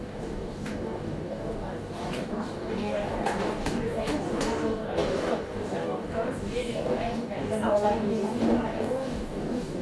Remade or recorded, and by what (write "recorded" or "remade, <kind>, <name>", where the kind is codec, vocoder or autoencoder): remade, codec, DAC